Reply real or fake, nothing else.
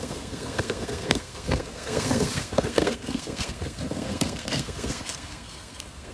fake